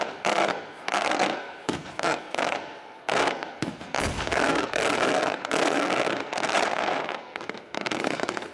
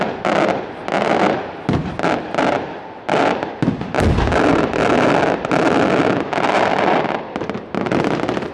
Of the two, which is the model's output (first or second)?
first